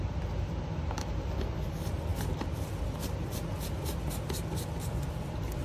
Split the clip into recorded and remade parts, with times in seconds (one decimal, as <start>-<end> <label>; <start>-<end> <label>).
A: 0.0-5.6 recorded